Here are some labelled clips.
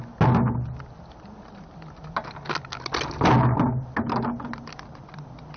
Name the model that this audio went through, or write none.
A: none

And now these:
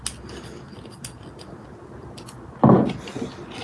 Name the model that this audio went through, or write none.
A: none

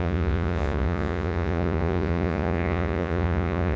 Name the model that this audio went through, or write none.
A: vocoder, Vocos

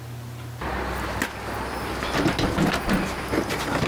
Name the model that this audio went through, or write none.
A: none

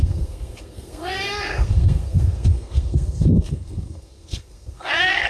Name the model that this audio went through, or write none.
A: codec, SNAC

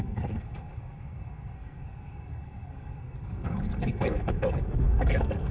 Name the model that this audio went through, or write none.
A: codec, SNAC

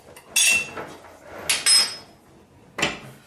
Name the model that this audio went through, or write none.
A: none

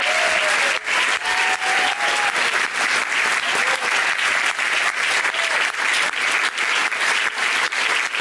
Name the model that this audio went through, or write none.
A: none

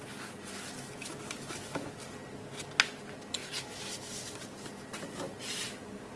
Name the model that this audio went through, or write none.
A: none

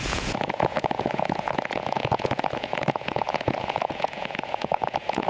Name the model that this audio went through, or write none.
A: vocoder, Vocos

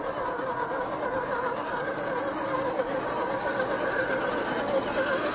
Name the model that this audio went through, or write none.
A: none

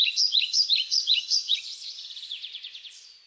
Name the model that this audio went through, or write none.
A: vocoder, Vocos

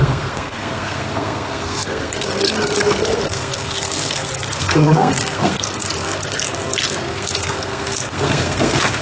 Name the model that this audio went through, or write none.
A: codec, SNAC